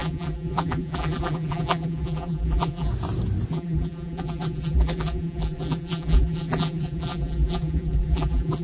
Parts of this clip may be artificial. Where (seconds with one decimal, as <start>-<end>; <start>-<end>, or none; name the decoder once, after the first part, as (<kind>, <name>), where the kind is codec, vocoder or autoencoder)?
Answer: 0.0-2.9 (vocoder, BigVGAN v2); 3.5-8.6